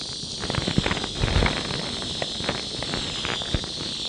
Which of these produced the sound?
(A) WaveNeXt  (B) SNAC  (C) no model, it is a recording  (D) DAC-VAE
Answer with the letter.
C